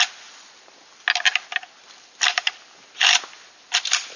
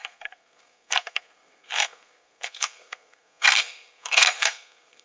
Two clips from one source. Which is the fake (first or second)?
second